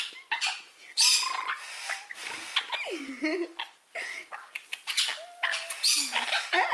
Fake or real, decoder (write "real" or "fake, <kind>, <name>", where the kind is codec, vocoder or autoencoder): real